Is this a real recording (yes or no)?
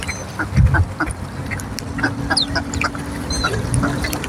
yes